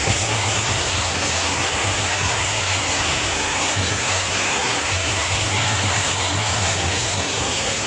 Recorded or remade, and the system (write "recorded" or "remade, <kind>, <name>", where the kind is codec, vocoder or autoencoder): remade, codec, SNAC